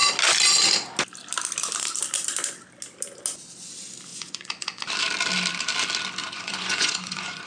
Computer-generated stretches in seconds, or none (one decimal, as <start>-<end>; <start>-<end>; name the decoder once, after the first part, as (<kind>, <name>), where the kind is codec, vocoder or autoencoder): 4.1-4.8 (vocoder, Vocos); 6.2-7.5